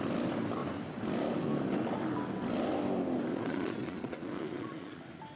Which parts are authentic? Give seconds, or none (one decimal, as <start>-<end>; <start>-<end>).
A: 0.0-3.3; 5.0-5.4